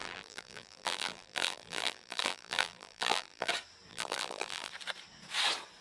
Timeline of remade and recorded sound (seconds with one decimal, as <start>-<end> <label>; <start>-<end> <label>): 0.0-3.5 remade; 3.5-3.9 recorded; 3.9-4.7 remade; 4.7-5.8 recorded